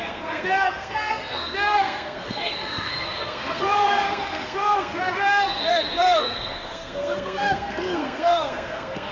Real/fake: fake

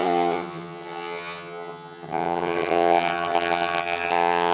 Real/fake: fake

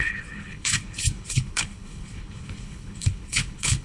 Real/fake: fake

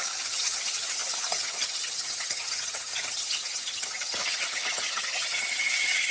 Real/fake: fake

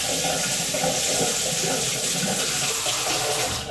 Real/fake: real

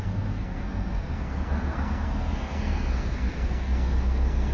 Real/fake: fake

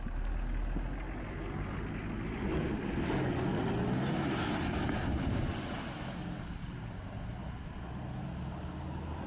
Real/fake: real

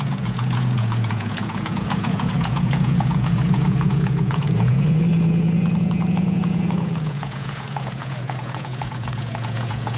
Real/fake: fake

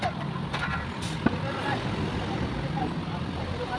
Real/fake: real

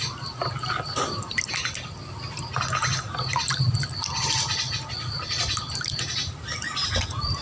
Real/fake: real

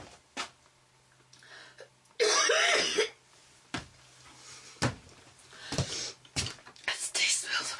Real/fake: real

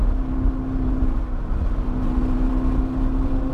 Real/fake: real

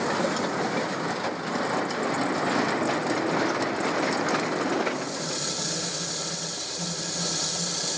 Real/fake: real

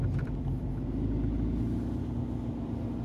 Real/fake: real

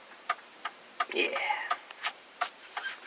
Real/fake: fake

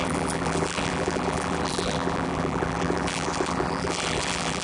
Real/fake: fake